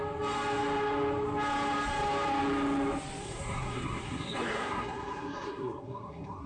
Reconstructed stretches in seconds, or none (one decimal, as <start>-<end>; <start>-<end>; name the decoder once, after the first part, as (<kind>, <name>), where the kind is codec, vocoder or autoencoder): 3.2-6.5 (codec, SNAC)